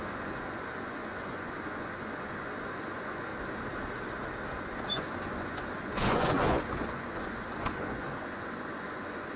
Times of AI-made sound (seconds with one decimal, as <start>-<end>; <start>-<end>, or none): 0.0-3.3; 4.5-9.4